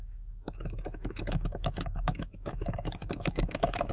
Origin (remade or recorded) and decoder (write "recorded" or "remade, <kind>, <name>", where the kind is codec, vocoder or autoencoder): remade, autoencoder, DAC-VAE